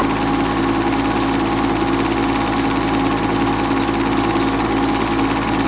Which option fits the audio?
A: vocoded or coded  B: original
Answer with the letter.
B